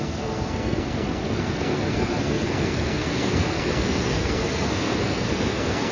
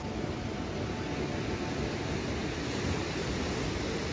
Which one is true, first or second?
second